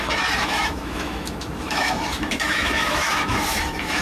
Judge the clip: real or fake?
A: fake